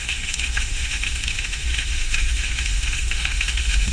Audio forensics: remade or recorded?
remade